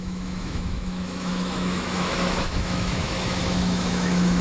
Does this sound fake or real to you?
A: fake